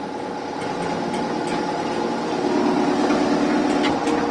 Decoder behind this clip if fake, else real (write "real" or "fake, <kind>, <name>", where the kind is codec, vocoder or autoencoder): real